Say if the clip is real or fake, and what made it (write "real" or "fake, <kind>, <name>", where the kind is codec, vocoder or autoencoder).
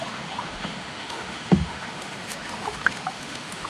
fake, autoencoder, DAC-VAE